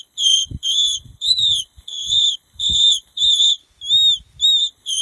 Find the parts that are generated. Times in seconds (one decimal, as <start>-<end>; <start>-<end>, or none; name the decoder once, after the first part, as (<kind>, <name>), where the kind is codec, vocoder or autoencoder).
0.0-3.6 (codec, HILCodec); 4.6-5.0